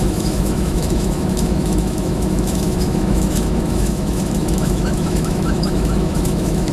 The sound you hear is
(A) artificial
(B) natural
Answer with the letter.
A